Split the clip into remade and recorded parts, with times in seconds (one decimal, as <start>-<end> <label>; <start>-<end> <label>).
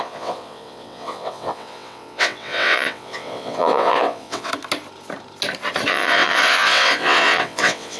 0.0-4.5 remade; 4.5-5.9 recorded; 5.9-8.0 remade